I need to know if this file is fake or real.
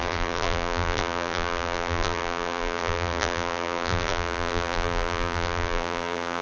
fake